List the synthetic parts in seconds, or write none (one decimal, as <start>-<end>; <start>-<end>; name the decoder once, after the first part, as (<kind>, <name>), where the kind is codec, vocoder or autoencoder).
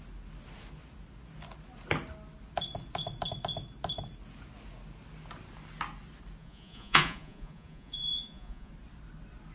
6.4-8.7 (vocoder, Vocos)